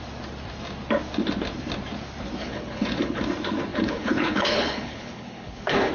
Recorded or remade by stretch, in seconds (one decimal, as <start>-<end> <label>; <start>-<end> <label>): 0.0-2.4 recorded; 2.4-3.2 remade; 3.2-3.7 recorded; 3.7-5.9 remade